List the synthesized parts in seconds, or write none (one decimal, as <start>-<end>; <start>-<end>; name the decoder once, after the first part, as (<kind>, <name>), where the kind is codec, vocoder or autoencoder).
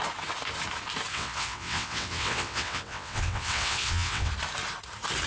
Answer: 1.1-4.3 (vocoder, WaveNeXt)